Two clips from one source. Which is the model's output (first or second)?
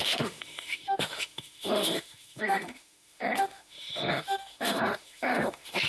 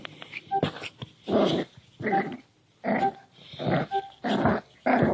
first